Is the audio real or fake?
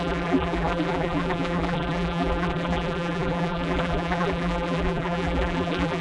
fake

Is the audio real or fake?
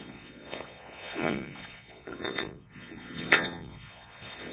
fake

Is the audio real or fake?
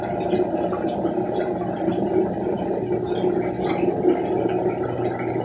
real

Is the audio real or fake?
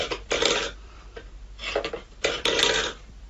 fake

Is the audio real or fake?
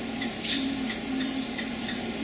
fake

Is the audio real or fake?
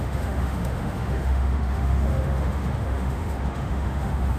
fake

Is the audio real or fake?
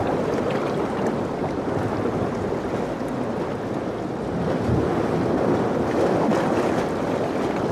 real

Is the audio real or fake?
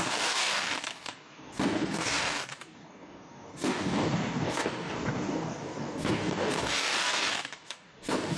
fake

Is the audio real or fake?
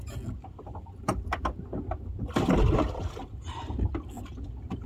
real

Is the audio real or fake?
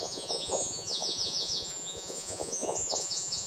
fake